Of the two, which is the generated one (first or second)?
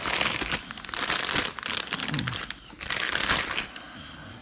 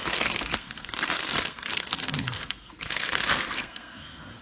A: second